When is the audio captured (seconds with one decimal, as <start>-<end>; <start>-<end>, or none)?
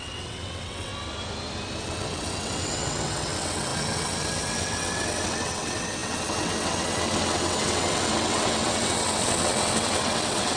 0.9-1.8